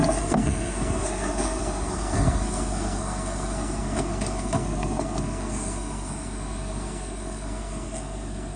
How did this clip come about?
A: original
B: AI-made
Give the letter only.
B